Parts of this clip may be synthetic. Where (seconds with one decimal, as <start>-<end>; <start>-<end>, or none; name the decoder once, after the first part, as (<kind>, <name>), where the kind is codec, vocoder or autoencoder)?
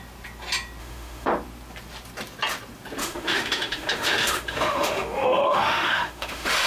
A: 0.8-1.3 (autoencoder, DAC-VAE); 3.0-6.7